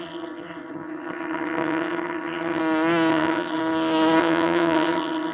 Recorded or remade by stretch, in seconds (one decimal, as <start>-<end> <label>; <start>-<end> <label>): 0.0-2.6 remade; 2.6-3.1 recorded; 3.1-3.6 remade; 3.6-4.2 recorded; 4.2-5.3 remade